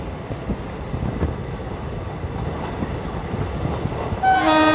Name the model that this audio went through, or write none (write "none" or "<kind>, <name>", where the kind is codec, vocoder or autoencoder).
none